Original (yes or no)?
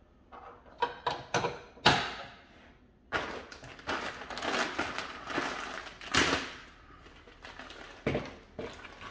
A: yes